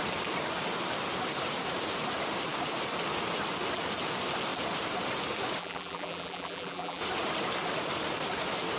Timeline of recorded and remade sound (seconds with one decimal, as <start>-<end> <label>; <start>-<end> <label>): 0.0-5.6 recorded; 5.6-7.0 remade; 7.0-8.8 recorded